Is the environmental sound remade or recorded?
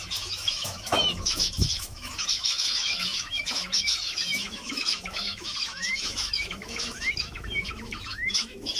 remade